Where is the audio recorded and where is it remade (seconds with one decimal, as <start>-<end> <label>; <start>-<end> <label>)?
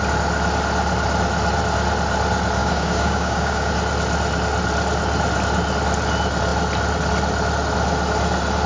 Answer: 0.0-2.6 recorded; 2.6-3.7 remade; 3.7-8.7 recorded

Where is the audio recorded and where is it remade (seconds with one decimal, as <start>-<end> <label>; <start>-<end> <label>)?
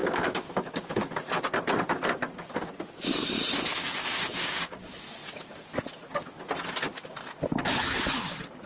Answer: 0.0-1.4 remade; 1.4-3.7 recorded; 3.7-4.8 remade; 4.8-8.7 recorded